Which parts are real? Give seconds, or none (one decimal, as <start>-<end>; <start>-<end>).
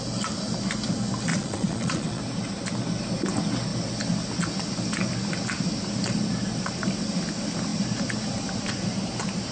0.0-1.3; 2.2-9.5